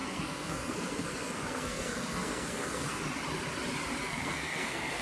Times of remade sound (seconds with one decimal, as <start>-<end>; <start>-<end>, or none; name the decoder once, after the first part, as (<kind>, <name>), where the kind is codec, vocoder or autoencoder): 0.0-3.0 (codec, SNAC); 4.0-5.0